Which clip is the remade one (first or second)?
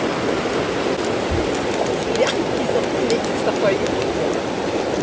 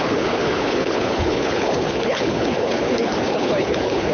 second